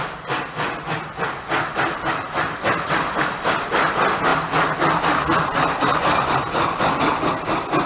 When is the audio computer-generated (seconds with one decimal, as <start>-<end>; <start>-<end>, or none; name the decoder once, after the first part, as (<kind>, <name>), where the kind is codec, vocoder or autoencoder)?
none